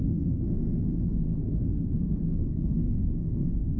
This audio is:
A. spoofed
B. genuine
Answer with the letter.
A